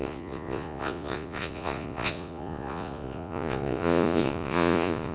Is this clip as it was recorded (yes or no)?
no